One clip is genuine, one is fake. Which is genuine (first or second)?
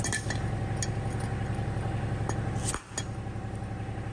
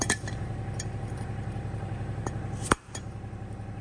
first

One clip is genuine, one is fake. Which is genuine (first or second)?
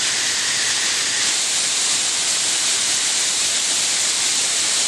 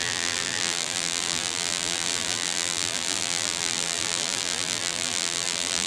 first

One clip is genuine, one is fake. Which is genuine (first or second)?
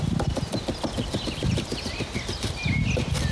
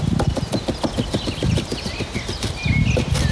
second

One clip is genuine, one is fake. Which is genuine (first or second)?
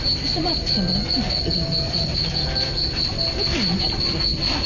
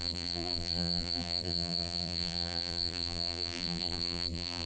first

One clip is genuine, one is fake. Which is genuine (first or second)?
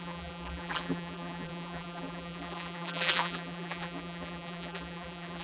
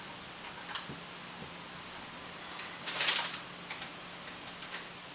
second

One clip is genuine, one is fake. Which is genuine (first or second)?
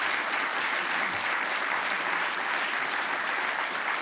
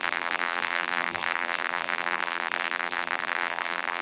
first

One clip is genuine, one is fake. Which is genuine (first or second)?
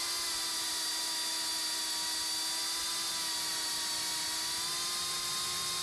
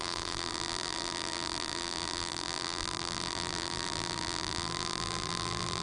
first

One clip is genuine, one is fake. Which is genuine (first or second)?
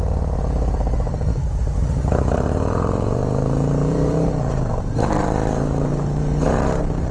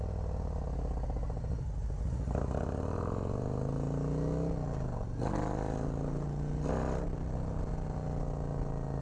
second